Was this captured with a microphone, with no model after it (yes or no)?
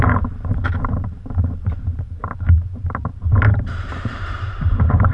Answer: no